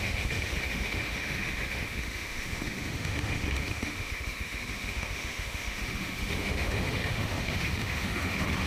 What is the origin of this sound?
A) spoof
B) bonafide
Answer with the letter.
A